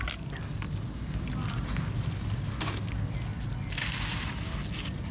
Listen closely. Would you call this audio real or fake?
real